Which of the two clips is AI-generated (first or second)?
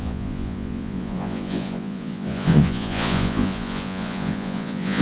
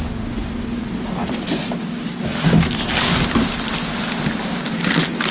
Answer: first